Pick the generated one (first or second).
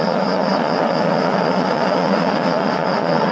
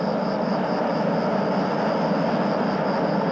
first